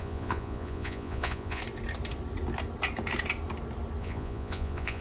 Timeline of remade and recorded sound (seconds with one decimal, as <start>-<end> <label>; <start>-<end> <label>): 0.0-1.6 remade; 1.6-4.0 recorded; 4.0-5.0 remade